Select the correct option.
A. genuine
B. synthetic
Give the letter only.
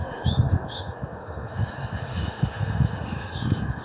B